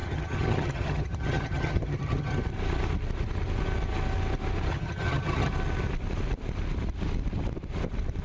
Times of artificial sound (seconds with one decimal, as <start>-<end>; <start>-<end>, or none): 0.0-2.4; 4.7-5.5